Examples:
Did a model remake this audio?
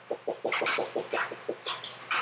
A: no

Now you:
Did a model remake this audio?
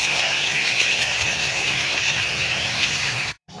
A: yes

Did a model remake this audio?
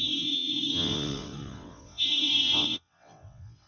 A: yes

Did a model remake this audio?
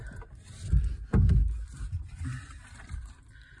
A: yes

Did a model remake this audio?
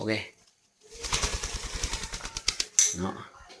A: no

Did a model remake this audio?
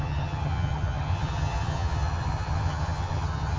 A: yes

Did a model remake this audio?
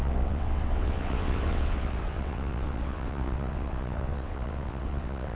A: yes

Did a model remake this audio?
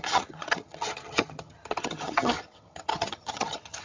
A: yes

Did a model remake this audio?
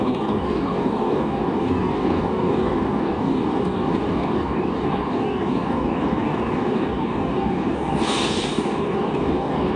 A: yes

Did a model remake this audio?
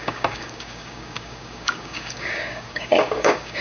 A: yes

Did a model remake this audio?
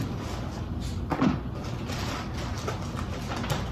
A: no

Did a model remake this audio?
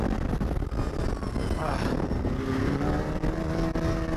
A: no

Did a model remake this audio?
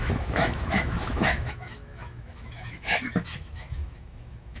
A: yes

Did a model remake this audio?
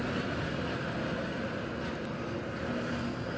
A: no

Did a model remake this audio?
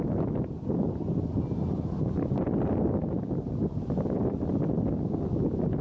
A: no